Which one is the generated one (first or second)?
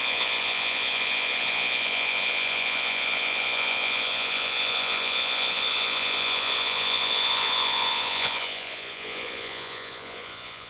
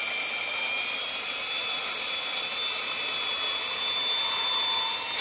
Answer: first